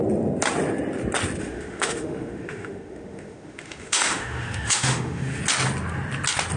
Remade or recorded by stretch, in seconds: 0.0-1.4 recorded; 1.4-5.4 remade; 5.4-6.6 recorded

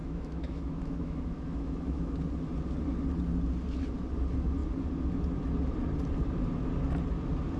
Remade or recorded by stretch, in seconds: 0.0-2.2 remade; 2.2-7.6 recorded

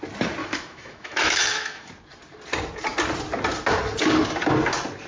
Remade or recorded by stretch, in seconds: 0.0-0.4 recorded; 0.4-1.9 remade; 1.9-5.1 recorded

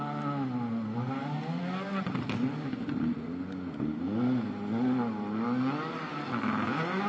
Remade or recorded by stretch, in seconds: 0.0-7.1 recorded

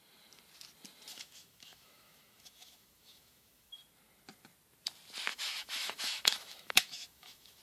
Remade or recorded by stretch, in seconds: 0.0-1.1 recorded; 1.1-3.7 remade; 3.7-5.3 recorded; 5.3-7.6 remade

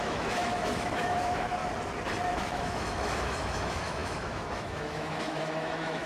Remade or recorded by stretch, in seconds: 0.0-1.6 remade; 1.6-2.3 recorded; 2.3-6.1 remade

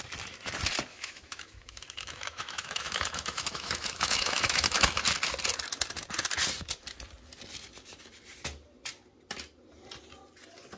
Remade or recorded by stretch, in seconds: 0.0-0.9 recorded; 0.9-5.0 remade; 5.0-10.8 recorded